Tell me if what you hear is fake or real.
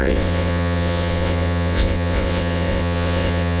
fake